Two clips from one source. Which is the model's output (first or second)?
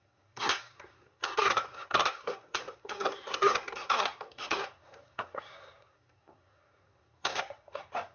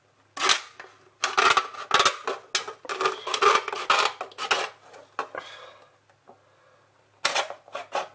first